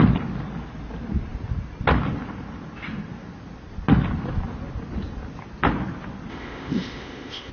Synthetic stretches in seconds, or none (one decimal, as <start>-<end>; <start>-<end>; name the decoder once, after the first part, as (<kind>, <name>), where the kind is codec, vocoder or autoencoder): 6.3-7.5 (codec, ZipCodec)